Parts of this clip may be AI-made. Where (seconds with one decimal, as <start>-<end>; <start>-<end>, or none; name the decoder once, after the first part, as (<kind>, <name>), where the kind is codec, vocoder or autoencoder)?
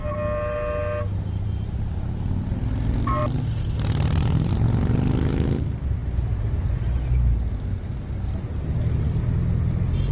3.2-4.5 (vocoder, BigVGAN v2); 6.0-7.5